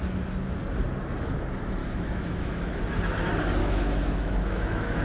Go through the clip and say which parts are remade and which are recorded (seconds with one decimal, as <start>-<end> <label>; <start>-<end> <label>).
0.0-1.8 recorded; 1.8-2.8 remade; 2.8-3.6 recorded; 3.6-5.0 remade

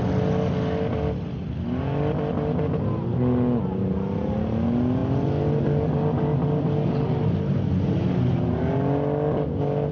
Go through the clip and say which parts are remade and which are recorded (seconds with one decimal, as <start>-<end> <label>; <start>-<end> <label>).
0.0-9.9 recorded

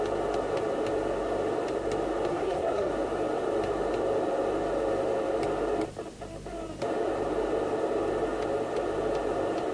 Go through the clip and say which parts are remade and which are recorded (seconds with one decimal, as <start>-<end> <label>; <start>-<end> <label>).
0.0-2.3 recorded; 2.3-2.9 remade; 2.9-9.7 recorded

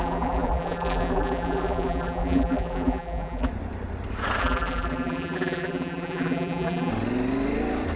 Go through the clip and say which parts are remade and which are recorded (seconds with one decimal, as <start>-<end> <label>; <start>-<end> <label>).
0.0-3.5 remade; 3.5-4.4 recorded; 4.4-6.9 remade; 6.9-8.0 recorded

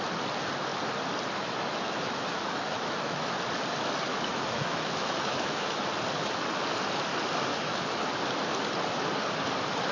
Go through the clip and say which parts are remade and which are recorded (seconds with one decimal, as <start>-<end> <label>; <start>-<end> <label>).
0.0-1.6 recorded; 1.6-3.3 remade; 3.3-4.1 recorded; 4.1-5.8 remade; 5.8-7.5 recorded; 7.5-8.1 remade; 8.1-9.9 recorded